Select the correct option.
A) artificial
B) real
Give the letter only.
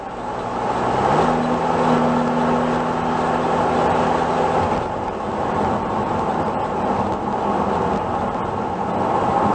B